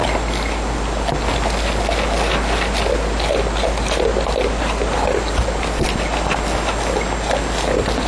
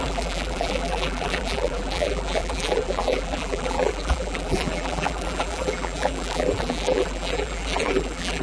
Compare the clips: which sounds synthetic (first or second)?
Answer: second